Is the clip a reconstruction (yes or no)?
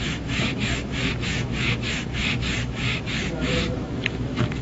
yes